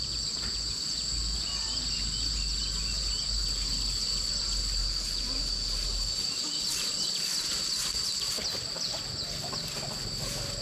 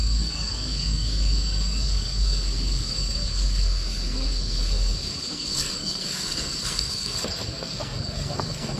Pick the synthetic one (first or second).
second